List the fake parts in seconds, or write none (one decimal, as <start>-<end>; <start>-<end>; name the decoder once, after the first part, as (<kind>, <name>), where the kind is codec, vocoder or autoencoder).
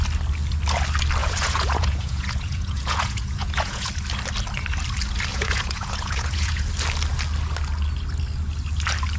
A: 1.2-3.9 (vocoder, Vocos); 5.3-6.7